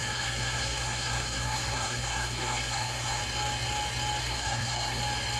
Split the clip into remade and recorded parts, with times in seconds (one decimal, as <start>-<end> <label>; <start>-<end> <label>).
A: 0.0-3.2 remade; 3.2-4.2 recorded; 4.2-5.0 remade; 5.0-5.4 recorded